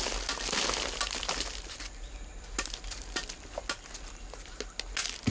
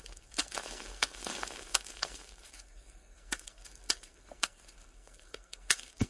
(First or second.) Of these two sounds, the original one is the first